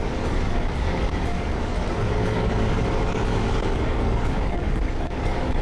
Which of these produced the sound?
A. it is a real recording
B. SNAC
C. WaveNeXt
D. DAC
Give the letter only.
D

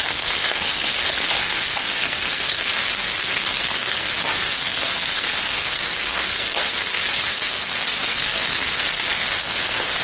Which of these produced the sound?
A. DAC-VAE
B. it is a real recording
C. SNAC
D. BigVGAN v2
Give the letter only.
C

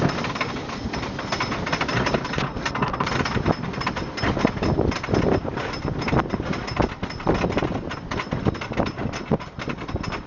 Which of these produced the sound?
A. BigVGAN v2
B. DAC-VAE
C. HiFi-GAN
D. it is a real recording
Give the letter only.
D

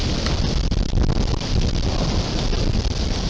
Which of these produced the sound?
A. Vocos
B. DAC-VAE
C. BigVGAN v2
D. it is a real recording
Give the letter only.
D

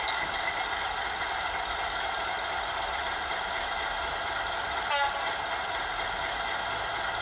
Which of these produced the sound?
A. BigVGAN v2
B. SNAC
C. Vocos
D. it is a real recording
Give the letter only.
D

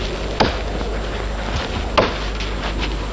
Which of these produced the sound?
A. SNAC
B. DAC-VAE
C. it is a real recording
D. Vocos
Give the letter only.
C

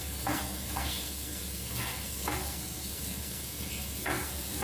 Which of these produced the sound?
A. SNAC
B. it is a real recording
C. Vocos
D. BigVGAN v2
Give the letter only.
A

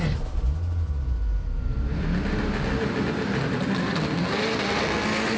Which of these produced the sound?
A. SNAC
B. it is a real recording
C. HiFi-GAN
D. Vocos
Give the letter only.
B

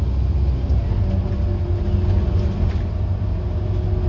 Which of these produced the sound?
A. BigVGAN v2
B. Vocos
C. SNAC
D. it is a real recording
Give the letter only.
D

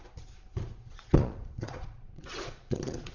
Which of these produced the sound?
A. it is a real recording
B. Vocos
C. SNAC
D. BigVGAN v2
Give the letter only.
B